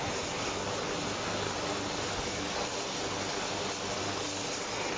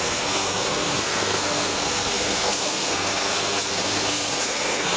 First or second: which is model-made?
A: second